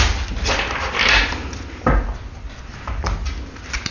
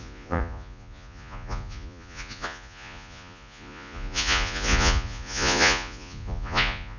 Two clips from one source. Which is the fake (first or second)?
second